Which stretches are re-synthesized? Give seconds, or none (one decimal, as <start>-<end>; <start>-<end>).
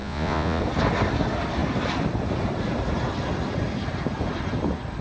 0.0-0.6